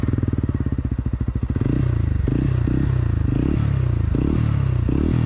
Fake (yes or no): no